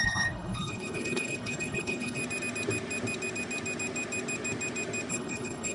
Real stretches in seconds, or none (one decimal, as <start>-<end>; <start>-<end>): 2.2-5.1